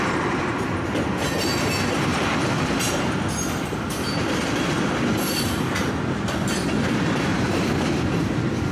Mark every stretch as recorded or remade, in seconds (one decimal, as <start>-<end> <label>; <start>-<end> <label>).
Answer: 0.0-2.1 recorded; 2.1-3.0 remade; 3.0-7.3 recorded; 7.3-8.1 remade; 8.1-8.7 recorded